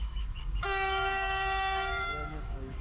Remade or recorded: remade